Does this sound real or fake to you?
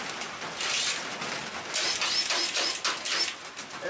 real